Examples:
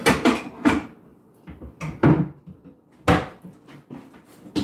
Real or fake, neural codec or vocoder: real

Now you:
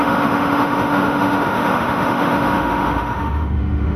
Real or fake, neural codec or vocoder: fake, autoencoder, DAC-VAE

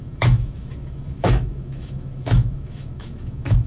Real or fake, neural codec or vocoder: fake, autoencoder, DAC-VAE